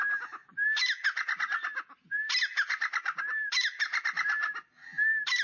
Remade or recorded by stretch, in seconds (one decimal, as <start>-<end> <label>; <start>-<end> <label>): 0.0-5.4 recorded